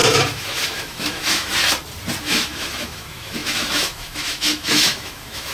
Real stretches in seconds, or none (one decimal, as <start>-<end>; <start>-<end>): 1.5-2.2